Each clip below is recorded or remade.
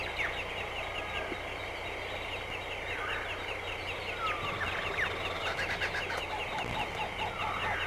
recorded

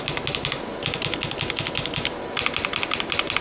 recorded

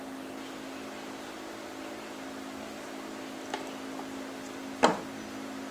recorded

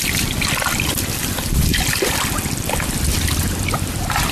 remade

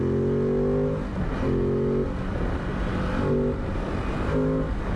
recorded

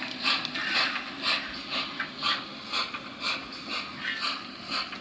recorded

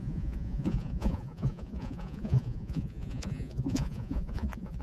remade